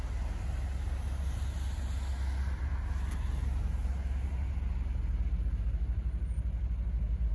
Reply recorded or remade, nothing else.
recorded